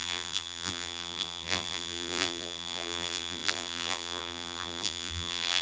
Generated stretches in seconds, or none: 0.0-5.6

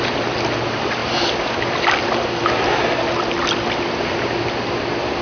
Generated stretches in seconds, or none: none

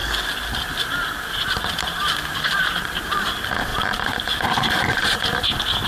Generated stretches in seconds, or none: 0.9-5.9

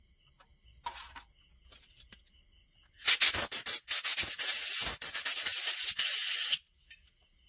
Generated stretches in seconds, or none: none